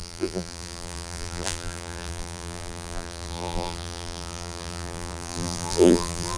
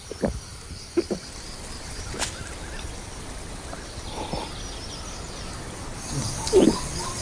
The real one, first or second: second